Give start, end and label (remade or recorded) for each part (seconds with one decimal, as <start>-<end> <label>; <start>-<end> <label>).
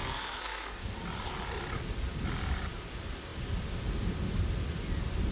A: 0.0-1.0 remade; 1.0-5.3 recorded